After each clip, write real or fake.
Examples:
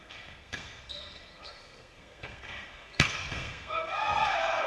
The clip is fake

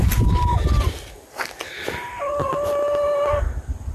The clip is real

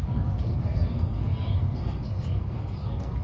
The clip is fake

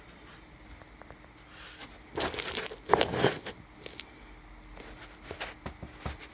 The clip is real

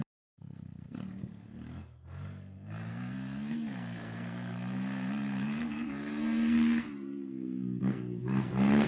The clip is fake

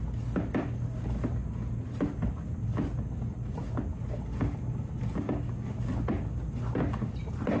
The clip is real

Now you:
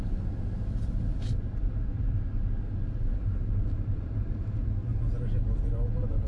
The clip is real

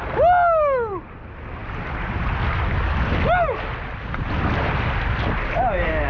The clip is real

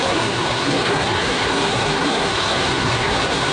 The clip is fake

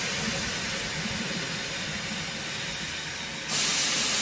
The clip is real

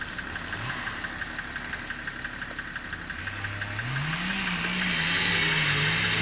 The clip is real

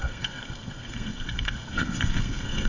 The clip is fake